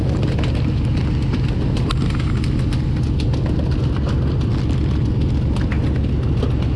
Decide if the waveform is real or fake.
real